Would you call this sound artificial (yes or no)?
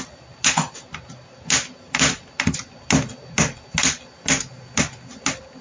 no